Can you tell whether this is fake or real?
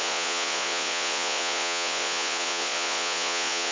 fake